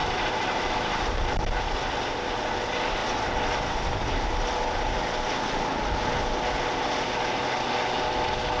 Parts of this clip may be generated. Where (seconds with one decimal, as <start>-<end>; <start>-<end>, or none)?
0.0-1.5